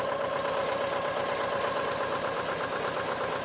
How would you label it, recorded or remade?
remade